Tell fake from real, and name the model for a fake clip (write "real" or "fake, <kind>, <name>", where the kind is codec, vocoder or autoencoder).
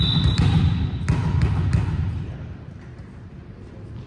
real